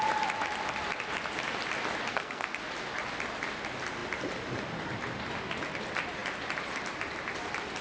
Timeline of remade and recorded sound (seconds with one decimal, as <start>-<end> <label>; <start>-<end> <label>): 0.0-2.1 recorded; 2.1-2.6 remade; 2.6-7.8 recorded